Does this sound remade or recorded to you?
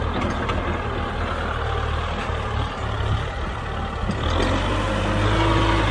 recorded